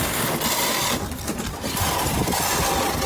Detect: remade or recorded recorded